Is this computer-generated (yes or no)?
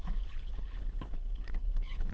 yes